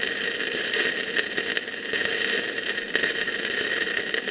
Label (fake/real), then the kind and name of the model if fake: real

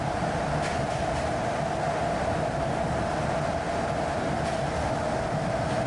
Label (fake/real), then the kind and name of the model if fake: real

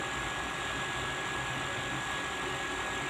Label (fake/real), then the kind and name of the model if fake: real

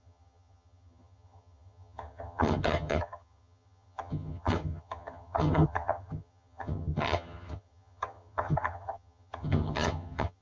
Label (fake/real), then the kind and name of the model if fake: fake, vocoder, HiFi-GAN